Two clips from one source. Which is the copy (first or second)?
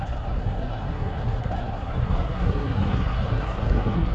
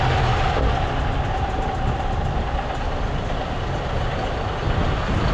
first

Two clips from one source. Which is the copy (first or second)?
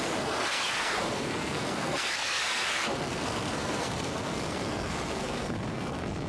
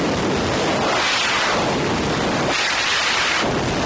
first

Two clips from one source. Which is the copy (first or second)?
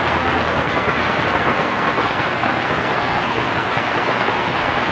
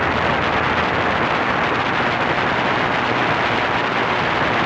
first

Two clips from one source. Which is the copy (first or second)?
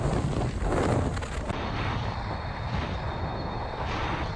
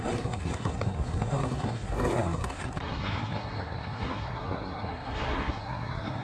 second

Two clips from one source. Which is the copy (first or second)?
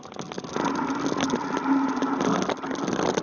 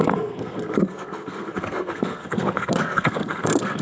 second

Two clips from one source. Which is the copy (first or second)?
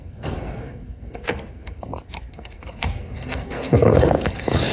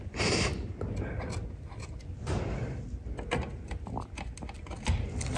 first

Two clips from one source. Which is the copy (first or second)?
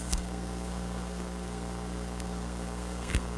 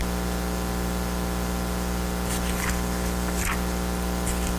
first